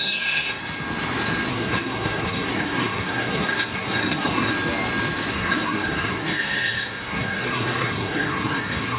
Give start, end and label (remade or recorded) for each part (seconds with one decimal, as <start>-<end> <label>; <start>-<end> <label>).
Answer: 0.0-0.6 remade; 0.6-1.5 recorded; 1.5-4.5 remade; 4.5-5.3 recorded; 5.3-9.0 remade